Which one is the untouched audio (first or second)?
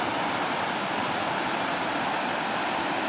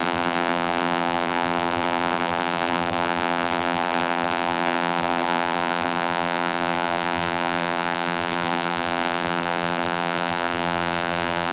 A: first